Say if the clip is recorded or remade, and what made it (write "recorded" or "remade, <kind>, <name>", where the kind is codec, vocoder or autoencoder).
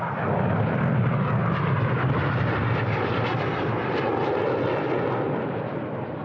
remade, vocoder, BigVGAN v2